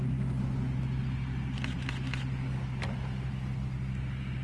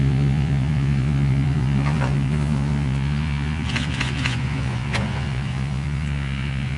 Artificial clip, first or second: second